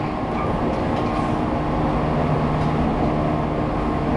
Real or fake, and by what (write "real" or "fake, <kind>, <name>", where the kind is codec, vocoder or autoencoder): real